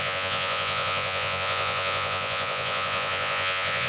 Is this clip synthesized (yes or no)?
yes